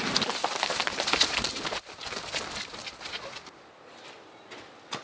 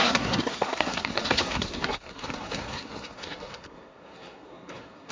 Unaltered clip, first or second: first